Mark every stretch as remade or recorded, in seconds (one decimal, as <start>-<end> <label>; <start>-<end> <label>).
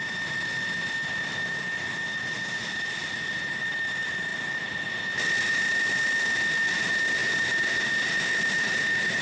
0.0-9.2 recorded